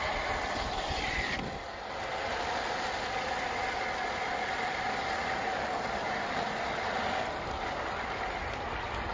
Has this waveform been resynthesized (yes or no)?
no